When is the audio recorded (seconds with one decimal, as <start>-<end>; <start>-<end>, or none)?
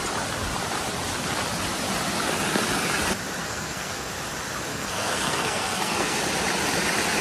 0.0-3.4; 4.1-4.7; 6.2-7.2